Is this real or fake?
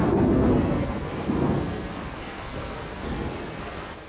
fake